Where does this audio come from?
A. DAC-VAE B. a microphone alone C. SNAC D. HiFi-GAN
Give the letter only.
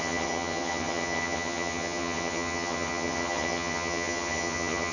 D